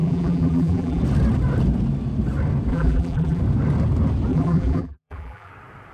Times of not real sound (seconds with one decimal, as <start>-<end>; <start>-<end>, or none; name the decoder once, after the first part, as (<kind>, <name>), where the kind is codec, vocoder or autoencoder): 0.0-1.0 (vocoder, BigVGAN v2); 2.7-3.4; 4.3-5.5

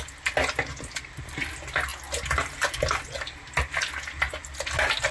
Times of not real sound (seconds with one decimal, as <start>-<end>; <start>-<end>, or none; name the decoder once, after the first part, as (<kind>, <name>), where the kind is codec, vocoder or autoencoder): none